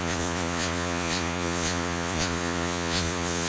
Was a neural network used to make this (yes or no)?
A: yes